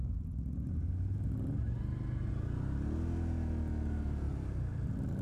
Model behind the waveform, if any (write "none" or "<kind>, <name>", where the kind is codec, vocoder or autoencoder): none